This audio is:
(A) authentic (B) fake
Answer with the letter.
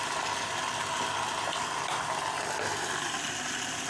A